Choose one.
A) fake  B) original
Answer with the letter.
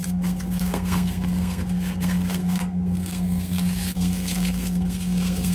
A